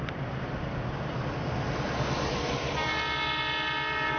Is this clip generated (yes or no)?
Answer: no